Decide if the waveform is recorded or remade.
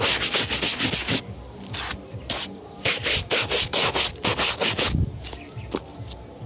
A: recorded